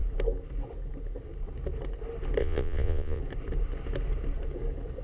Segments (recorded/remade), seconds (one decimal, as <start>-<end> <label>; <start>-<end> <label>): 0.0-2.4 recorded; 2.4-3.2 remade; 3.2-5.0 recorded